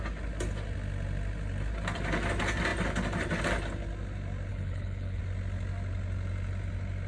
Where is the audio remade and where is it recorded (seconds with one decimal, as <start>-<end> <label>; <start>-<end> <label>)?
0.0-4.5 recorded; 4.5-5.2 remade; 5.2-7.1 recorded